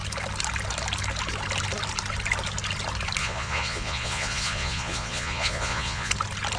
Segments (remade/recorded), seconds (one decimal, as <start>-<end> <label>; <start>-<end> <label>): 0.0-3.2 recorded; 3.2-6.1 remade; 6.1-6.6 recorded